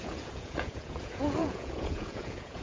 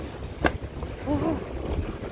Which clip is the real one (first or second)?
second